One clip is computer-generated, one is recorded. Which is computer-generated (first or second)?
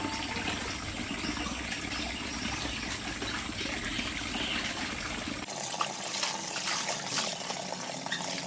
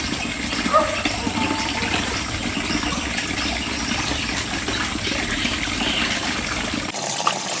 second